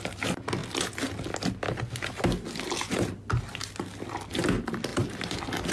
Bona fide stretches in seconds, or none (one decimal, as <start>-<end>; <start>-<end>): 0.0-4.9